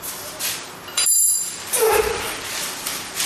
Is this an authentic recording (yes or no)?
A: no